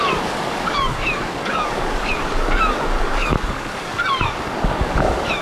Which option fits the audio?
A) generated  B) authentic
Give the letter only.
A